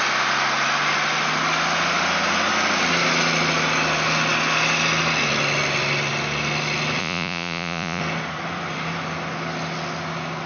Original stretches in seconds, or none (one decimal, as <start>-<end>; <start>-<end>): 0.0-7.0; 8.0-10.5